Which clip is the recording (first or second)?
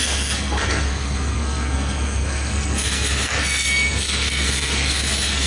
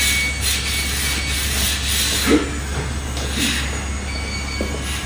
second